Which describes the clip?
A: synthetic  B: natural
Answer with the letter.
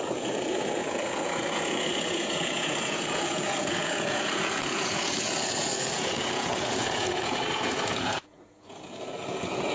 A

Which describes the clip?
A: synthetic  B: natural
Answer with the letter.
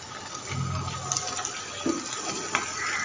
B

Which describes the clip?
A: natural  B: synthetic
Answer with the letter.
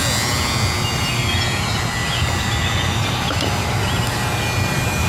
A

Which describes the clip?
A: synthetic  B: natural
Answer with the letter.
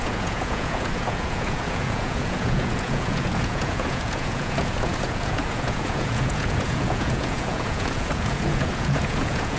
A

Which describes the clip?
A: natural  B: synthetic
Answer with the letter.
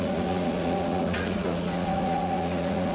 B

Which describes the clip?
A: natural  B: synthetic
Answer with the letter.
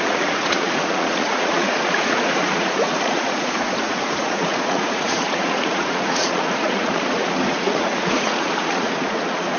B